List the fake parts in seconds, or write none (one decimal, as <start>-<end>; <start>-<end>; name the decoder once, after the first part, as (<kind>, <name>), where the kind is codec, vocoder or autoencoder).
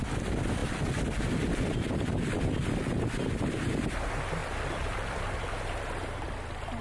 4.4-6.2 (vocoder, BigVGAN v2)